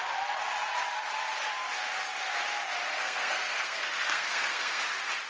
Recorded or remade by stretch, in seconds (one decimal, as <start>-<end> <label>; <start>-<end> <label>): 0.0-2.9 recorded; 2.9-4.8 remade; 4.8-5.3 recorded